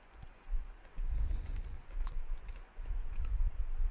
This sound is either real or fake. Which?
fake